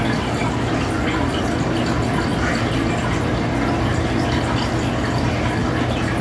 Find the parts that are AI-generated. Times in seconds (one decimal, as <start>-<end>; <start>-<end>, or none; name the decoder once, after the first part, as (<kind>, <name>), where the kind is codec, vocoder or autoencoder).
none

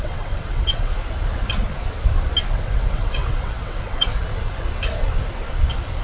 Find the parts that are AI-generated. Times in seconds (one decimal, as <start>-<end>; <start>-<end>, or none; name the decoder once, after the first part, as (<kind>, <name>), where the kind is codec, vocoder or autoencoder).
0.0-0.9 (vocoder, WaveNeXt); 2.5-4.1

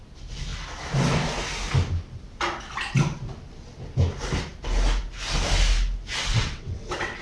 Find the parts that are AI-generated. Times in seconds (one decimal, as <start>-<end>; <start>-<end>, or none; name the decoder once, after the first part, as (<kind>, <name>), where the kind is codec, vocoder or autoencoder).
6.2-7.2 (vocoder, WaveNeXt)

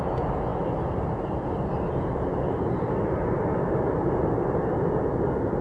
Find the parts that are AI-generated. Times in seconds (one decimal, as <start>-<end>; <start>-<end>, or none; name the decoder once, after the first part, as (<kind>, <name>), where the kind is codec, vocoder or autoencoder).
none

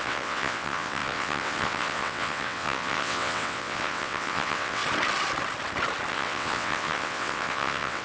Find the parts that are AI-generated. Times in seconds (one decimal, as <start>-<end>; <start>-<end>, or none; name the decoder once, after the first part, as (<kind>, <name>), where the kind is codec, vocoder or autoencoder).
0.0-4.8 (vocoder, WaveNeXt); 6.1-8.0